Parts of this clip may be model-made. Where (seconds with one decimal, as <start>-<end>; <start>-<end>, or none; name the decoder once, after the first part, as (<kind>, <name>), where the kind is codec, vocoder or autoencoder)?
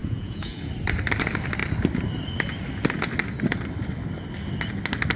0.0-0.7 (vocoder, Vocos)